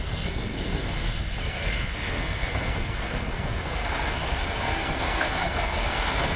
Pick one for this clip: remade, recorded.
remade